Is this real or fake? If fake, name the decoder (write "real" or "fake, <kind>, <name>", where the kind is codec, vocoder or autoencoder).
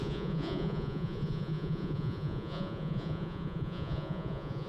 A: fake, vocoder, Vocos